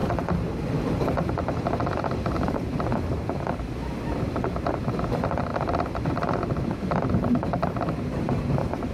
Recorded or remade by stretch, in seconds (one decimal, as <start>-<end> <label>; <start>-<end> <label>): 0.0-1.0 recorded; 1.0-2.9 remade; 2.9-4.1 recorded; 4.1-5.5 remade; 5.5-6.1 recorded; 6.1-8.9 remade